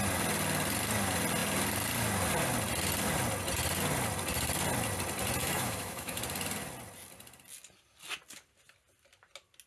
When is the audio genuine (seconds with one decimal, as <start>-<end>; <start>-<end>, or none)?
0.0-5.4; 6.2-9.7